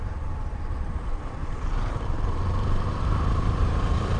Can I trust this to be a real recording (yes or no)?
no